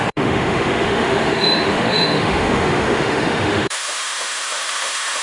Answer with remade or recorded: remade